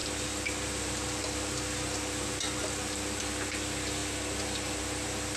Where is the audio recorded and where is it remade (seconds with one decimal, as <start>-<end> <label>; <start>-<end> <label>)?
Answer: 0.0-5.4 recorded